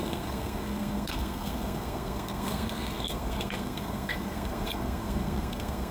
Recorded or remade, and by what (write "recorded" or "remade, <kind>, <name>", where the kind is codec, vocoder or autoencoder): remade, codec, SNAC